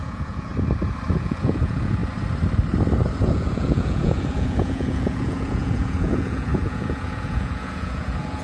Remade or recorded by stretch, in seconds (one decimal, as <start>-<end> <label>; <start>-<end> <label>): 0.0-0.5 remade; 0.5-1.1 recorded; 1.1-2.0 remade; 2.0-3.2 recorded; 3.2-8.4 remade